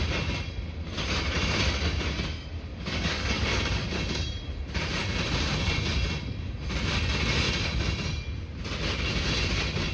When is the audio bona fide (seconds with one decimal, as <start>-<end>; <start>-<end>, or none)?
0.0-2.7; 3.6-9.9